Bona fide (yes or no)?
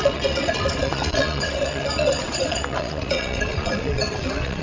no